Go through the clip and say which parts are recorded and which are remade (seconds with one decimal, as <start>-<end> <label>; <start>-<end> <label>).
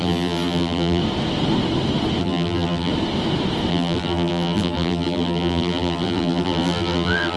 0.0-1.0 remade; 1.0-2.2 recorded; 2.2-2.9 remade; 2.9-3.7 recorded; 3.7-7.4 remade